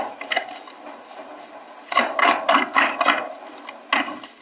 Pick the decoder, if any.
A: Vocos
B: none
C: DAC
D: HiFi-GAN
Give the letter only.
B